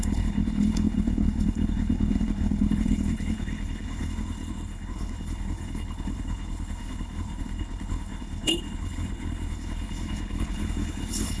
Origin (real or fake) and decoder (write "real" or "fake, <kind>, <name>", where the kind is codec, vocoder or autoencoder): fake, codec, HILCodec